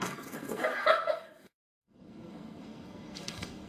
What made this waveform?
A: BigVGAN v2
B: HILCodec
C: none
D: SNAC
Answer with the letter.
D